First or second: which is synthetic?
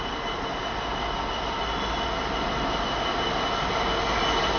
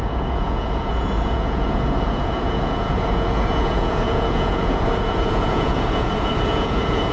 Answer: second